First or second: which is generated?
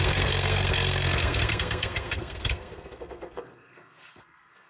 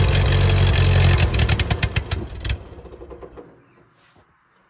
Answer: first